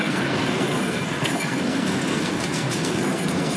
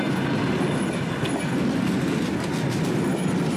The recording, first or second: second